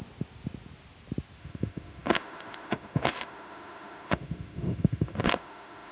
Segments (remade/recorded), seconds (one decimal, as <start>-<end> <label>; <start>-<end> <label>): 0.0-1.4 recorded; 1.4-5.9 remade